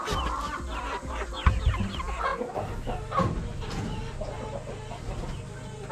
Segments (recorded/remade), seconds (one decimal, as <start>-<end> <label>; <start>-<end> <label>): 0.0-5.9 recorded